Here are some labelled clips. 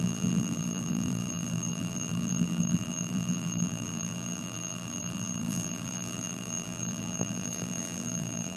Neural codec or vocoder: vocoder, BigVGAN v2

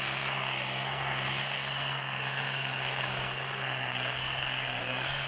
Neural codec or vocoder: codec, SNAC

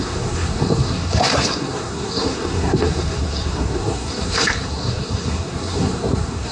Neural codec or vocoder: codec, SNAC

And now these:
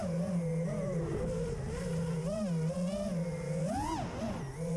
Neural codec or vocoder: none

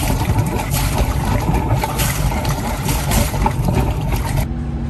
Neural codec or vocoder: vocoder, BigVGAN v2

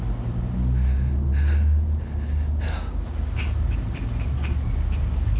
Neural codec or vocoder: none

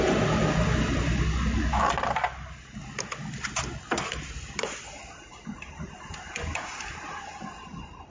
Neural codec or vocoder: none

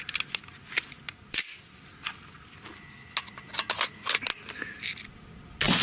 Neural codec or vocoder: none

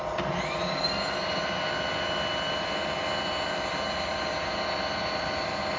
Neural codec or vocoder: none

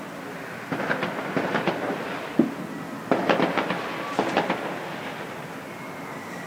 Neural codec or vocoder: none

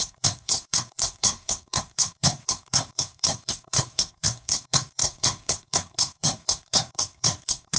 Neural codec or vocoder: codec, SNAC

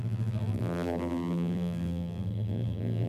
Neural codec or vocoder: vocoder, BigVGAN v2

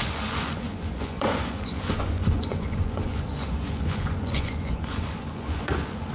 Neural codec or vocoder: vocoder, Vocos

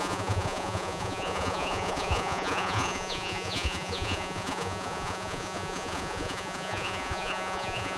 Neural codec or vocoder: vocoder, Vocos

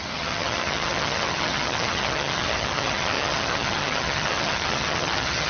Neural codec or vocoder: vocoder, HiFi-GAN